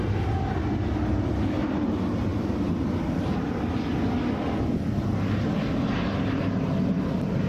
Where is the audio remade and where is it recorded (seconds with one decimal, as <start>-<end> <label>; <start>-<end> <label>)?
0.0-7.5 recorded